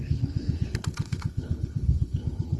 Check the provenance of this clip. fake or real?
fake